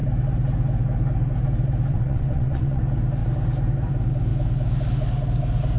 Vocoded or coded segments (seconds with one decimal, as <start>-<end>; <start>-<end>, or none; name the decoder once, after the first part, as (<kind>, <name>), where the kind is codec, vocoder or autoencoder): 1.9-2.8 (vocoder, WaveNeXt)